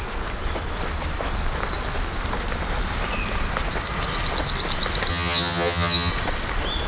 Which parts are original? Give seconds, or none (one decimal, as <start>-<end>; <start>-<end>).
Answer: 0.0-5.1; 6.1-6.9